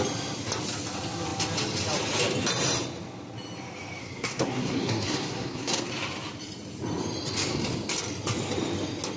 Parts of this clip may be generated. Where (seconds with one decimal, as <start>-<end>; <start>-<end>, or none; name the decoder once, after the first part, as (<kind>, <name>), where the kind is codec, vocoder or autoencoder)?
4.0-5.9 (codec, SNAC)